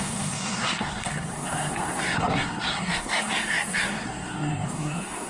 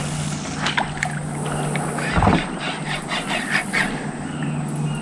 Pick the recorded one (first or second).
second